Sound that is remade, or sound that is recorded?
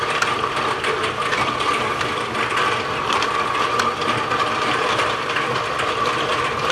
remade